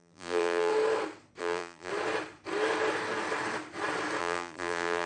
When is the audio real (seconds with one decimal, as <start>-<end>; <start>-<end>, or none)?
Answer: 0.7-1.4; 1.9-4.2